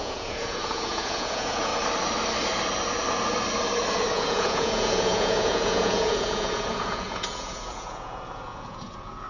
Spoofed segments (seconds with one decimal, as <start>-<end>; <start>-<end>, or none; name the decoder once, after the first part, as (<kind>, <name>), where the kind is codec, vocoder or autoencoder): 0.0-1.7 (vocoder, Vocos); 4.1-9.3

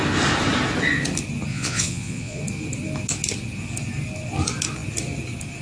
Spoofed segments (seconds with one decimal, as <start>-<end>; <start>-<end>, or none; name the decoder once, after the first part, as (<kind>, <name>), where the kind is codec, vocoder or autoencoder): 1.5-2.4 (vocoder, Vocos)

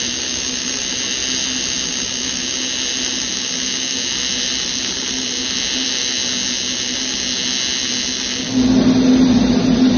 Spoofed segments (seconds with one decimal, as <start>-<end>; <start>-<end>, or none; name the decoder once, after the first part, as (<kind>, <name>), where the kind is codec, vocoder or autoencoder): none

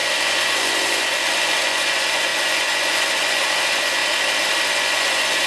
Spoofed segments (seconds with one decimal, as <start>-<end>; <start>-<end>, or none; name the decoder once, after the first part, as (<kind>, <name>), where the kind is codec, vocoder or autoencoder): 0.0-4.0 (vocoder, Vocos); 4.8-5.5